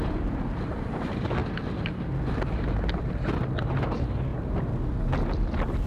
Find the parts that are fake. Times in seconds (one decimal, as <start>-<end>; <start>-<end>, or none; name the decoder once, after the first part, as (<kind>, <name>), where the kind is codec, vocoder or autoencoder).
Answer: none

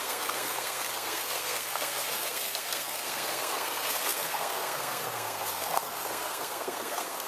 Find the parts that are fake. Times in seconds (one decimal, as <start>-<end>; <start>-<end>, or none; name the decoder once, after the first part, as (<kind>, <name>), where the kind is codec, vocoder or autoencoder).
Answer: 0.0-7.3 (codec, SNAC)

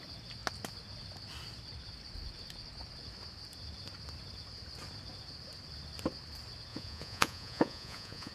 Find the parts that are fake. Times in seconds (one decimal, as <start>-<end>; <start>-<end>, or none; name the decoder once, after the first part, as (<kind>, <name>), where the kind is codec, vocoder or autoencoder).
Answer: 6.7-8.3 (vocoder, Vocos)

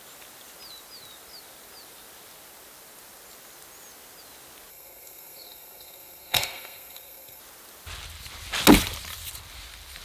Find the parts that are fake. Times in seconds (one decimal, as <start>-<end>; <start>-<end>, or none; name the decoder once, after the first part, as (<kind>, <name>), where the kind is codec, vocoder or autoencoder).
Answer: 4.7-7.4 (codec, SNAC)

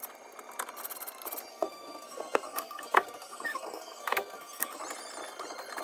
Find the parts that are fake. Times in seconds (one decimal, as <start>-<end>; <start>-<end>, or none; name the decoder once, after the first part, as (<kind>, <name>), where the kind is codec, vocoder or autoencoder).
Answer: 1.5-4.8 (codec, SNAC)